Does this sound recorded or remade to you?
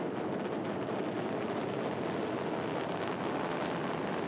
recorded